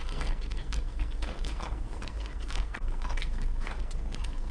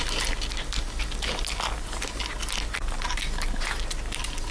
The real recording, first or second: second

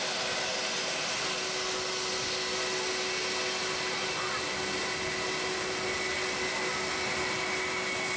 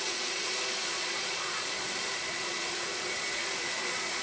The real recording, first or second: first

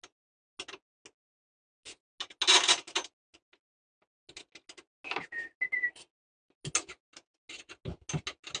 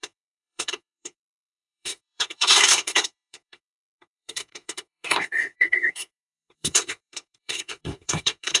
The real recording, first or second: first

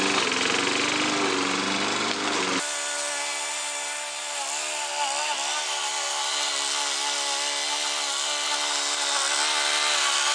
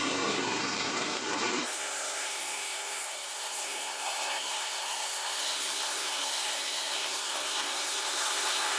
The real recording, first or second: first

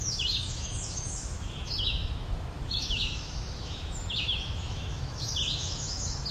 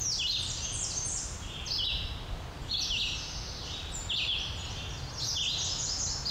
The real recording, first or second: second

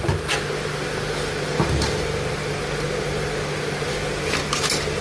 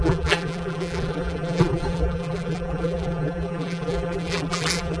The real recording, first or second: first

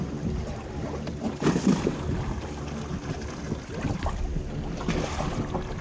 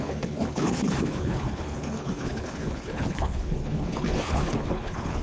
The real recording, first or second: first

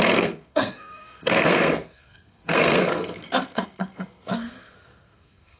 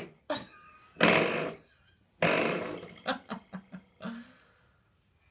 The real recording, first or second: second